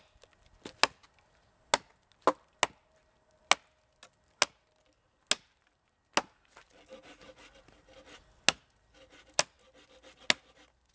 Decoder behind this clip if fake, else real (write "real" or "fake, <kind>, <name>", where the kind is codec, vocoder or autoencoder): real